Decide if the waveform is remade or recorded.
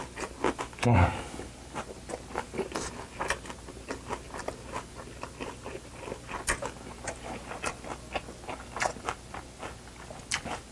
recorded